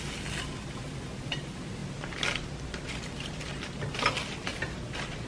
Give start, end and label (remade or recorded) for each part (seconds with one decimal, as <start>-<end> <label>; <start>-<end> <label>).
0.0-1.8 recorded; 1.8-2.6 remade; 2.6-4.5 recorded; 4.5-5.3 remade